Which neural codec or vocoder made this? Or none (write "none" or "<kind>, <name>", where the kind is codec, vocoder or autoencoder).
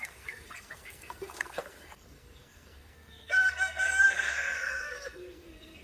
codec, SNAC